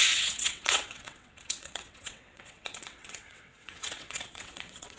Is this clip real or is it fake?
fake